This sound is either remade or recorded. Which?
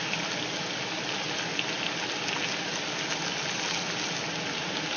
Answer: recorded